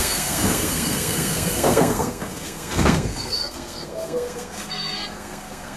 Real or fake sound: fake